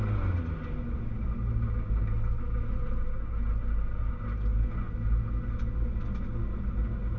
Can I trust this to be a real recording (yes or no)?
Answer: yes